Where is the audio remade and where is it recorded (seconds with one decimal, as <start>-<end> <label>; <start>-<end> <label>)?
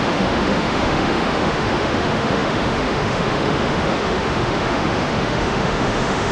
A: 0.0-6.3 remade